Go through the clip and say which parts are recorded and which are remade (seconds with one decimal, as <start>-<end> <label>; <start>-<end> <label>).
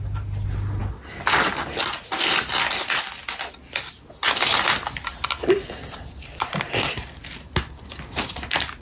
0.0-8.8 recorded